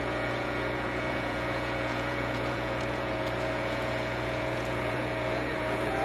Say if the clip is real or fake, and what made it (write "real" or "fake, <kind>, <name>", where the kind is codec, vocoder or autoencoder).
fake, vocoder, Vocos